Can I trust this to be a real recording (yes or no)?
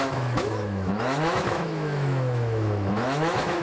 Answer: no